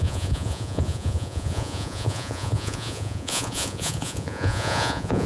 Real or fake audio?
fake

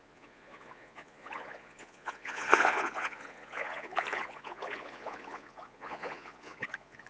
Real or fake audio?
fake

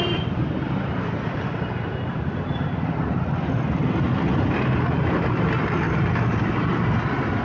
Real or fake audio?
real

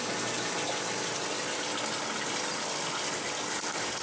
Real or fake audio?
real